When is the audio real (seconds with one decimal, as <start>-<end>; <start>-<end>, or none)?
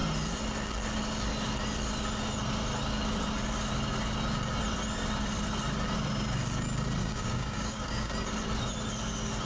0.0-7.0; 8.1-9.5